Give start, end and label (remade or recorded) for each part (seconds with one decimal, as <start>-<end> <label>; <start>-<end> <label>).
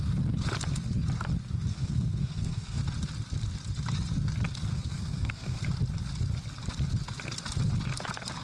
0.0-1.7 recorded; 1.7-2.8 remade; 2.8-4.7 recorded; 4.7-5.6 remade; 5.6-8.4 recorded